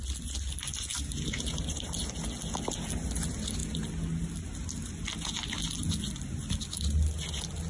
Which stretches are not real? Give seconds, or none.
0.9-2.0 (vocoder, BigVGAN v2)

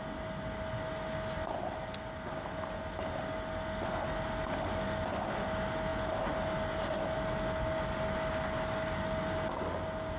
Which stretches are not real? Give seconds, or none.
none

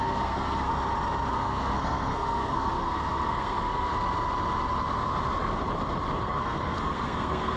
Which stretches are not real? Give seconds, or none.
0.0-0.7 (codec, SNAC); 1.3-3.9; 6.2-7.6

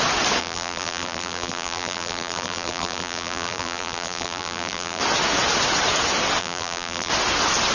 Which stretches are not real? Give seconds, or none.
0.4-5.0 (vocoder, BigVGAN v2); 6.4-7.1

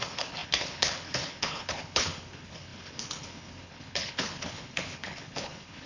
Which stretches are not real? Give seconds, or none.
0.0-5.9 (codec, HILCodec)

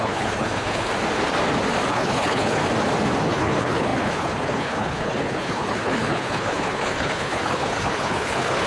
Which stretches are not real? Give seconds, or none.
0.0-0.9 (codec, HILCodec); 1.9-2.6; 3.3-8.7

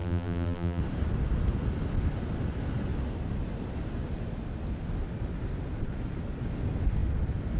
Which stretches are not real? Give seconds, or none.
0.0-0.8 (vocoder, BigVGAN v2)